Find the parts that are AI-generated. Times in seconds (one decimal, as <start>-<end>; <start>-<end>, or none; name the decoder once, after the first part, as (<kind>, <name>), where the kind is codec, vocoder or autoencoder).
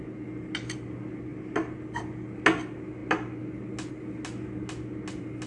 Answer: none